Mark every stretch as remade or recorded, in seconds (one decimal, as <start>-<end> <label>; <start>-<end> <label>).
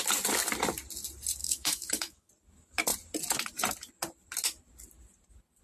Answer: 0.0-1.4 recorded; 1.4-2.3 remade; 2.3-5.6 recorded